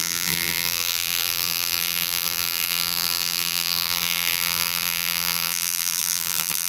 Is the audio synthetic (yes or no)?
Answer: yes